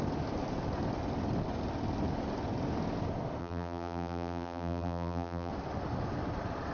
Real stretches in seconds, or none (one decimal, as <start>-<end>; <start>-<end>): 0.0-3.4; 5.5-6.7